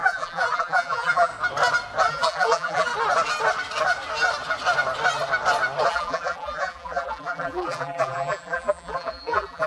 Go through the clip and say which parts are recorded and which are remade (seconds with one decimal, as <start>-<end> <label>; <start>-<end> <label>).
0.0-1.3 remade; 1.3-2.1 recorded; 2.1-2.9 remade; 2.9-5.9 recorded; 5.9-9.7 remade